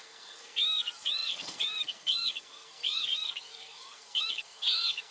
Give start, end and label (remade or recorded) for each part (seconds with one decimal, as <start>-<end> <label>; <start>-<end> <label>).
0.0-5.1 remade